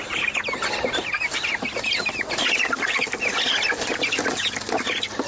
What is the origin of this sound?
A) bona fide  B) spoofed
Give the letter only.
A